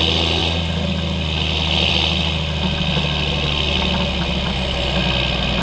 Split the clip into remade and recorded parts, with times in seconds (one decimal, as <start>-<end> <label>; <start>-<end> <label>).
0.0-5.6 recorded